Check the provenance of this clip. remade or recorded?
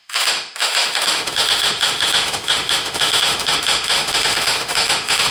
remade